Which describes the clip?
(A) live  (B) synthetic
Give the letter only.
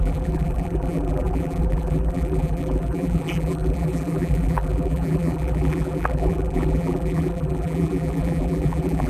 B